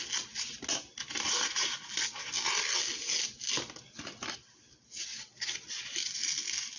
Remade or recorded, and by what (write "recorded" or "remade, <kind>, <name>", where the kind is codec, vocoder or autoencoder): recorded